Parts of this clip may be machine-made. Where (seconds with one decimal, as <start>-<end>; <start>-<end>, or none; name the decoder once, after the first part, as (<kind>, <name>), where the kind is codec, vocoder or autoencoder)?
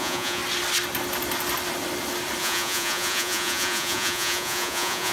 0.0-0.4 (vocoder, Vocos); 2.4-5.1